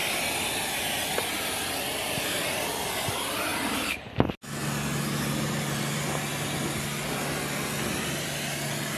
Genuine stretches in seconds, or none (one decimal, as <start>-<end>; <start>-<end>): 0.0-9.0